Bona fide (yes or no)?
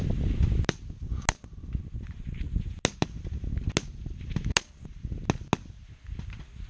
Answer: yes